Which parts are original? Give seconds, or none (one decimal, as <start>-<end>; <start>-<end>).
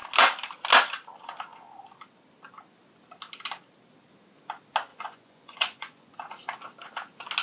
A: 0.0-4.9; 6.1-7.4